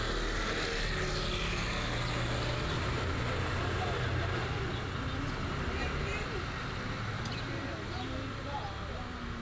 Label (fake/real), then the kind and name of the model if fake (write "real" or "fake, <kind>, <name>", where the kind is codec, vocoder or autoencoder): real